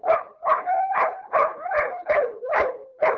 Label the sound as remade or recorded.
remade